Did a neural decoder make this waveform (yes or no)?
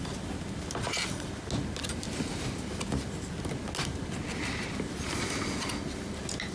no